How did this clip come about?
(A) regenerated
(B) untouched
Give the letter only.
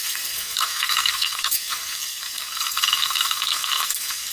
A